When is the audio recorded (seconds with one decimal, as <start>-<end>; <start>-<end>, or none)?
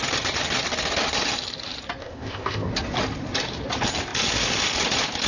0.0-2.0; 2.7-5.3